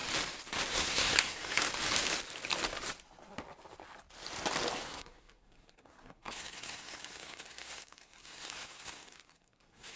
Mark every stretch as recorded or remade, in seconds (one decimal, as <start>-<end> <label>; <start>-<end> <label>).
0.0-0.7 recorded; 0.7-1.7 remade; 1.7-4.8 recorded; 4.8-10.0 remade

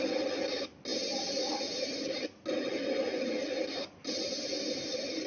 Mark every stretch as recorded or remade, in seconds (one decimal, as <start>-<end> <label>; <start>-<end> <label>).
0.0-5.3 recorded

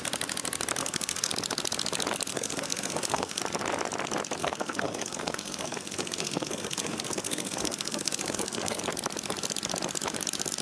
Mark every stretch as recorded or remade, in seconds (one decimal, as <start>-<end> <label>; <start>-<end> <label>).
0.0-0.8 recorded; 0.8-1.3 remade; 1.3-2.3 recorded; 2.3-3.4 remade; 3.4-4.4 recorded; 4.4-8.8 remade; 8.8-10.6 recorded

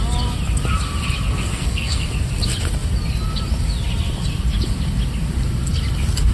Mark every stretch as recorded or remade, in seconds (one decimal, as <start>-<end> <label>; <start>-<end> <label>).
0.0-1.5 recorded; 1.5-2.1 remade; 2.1-6.3 recorded